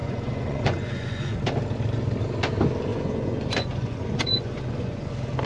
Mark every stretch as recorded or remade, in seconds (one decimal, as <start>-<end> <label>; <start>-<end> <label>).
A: 0.0-1.4 remade; 1.4-2.9 recorded; 2.9-5.1 remade; 5.1-5.5 recorded